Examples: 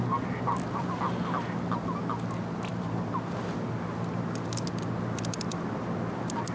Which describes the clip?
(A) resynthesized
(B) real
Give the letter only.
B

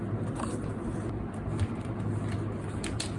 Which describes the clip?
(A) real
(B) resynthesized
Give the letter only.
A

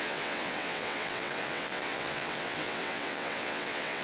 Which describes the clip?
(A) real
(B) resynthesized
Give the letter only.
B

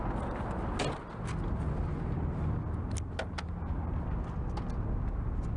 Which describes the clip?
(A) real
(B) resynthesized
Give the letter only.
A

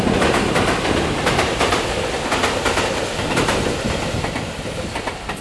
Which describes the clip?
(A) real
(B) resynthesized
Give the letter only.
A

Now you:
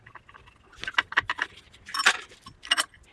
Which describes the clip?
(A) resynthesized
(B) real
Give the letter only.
B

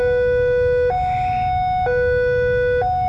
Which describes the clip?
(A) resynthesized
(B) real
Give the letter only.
B